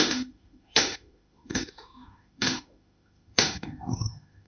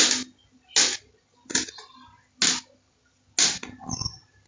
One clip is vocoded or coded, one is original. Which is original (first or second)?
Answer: second